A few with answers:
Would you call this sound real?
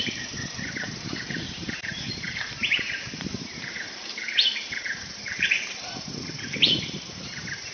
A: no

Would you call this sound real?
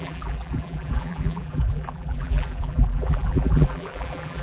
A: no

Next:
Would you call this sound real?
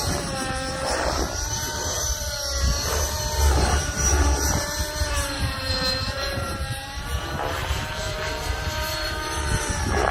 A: no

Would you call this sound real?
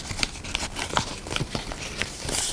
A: yes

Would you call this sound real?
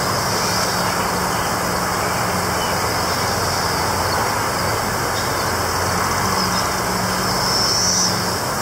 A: yes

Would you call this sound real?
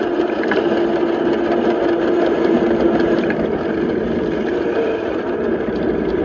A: yes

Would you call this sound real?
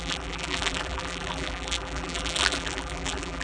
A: no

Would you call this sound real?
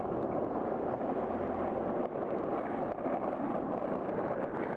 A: yes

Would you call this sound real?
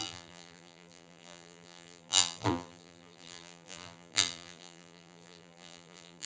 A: no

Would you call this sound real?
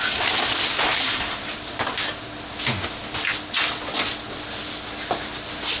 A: yes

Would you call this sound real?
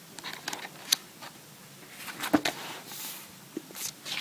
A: yes